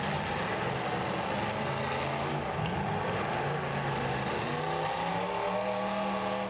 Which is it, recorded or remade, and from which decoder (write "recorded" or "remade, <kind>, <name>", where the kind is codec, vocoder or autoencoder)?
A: recorded